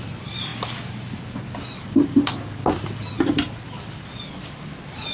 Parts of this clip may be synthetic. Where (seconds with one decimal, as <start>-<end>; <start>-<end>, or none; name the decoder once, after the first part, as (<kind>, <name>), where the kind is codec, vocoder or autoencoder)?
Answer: none